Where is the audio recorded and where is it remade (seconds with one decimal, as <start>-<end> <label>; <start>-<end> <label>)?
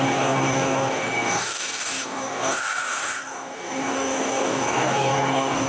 0.0-5.7 remade